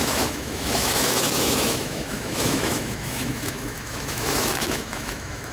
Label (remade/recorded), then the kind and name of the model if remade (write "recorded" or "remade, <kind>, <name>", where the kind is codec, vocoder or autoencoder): remade, autoencoder, DAC-VAE